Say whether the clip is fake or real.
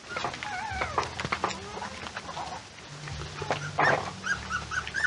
real